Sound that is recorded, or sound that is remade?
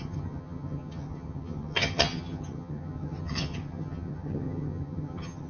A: remade